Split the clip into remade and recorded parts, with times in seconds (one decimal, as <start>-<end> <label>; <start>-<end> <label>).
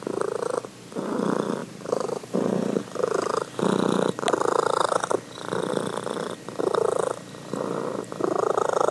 0.0-1.6 recorded; 1.6-2.8 remade; 2.8-8.9 recorded